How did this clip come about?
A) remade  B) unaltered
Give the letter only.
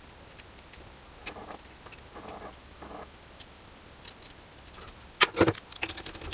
B